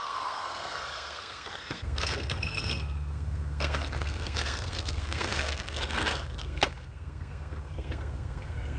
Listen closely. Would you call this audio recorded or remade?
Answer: remade